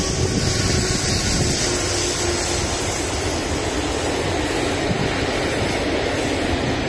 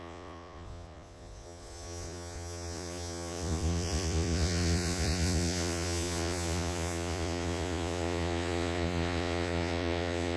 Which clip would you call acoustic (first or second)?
first